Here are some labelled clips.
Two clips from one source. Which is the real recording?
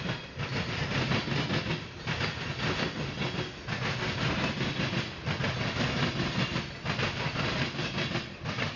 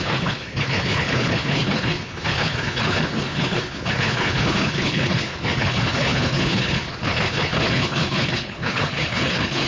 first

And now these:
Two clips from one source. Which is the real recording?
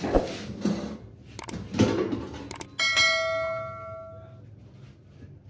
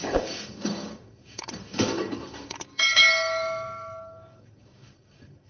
first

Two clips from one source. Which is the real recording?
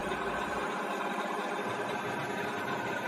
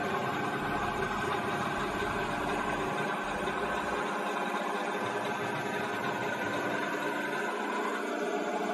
second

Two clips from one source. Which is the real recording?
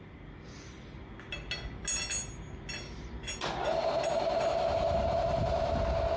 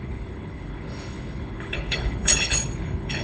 first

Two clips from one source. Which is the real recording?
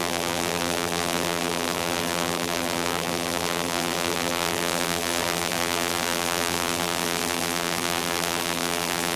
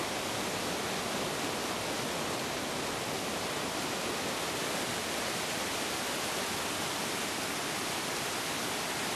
second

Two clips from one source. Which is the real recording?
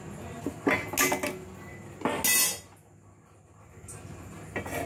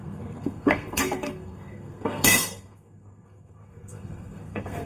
first